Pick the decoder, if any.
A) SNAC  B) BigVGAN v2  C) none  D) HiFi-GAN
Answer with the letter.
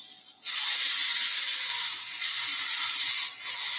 C